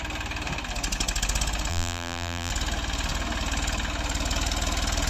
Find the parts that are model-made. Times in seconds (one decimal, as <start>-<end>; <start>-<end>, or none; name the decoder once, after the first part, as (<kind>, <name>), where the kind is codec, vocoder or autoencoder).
1.7-2.5 (vocoder, BigVGAN v2)